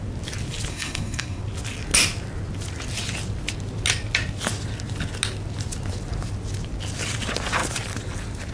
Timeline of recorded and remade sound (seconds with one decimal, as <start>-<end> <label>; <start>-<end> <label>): 0.0-0.7 recorded; 0.7-1.4 remade; 1.4-8.5 recorded